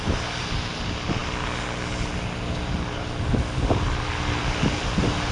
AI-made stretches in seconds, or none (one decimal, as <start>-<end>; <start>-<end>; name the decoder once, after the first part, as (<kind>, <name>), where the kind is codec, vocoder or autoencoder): none